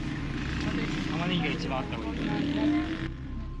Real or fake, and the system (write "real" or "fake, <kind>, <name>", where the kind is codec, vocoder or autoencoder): real